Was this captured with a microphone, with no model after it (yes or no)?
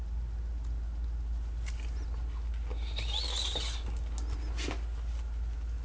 yes